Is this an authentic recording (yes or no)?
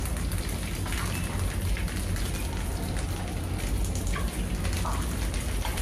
yes